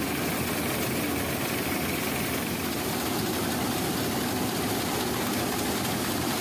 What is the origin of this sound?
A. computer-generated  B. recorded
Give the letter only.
B